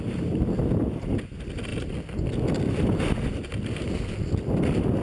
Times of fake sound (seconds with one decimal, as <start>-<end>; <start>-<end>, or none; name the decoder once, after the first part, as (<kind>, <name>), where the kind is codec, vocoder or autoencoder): none